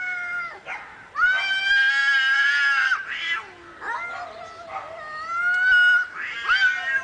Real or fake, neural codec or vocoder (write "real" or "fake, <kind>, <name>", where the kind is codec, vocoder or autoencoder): real